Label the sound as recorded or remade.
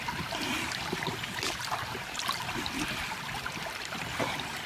recorded